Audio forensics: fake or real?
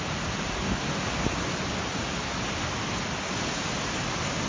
real